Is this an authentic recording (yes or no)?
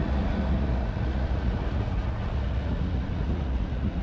no